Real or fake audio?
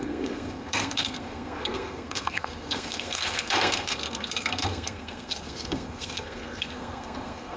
fake